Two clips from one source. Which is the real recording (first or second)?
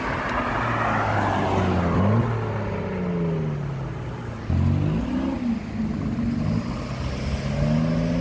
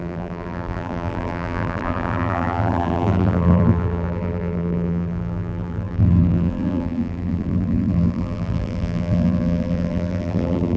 first